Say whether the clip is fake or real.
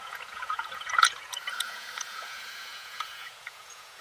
fake